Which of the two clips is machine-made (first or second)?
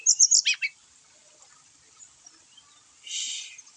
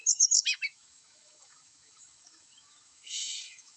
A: second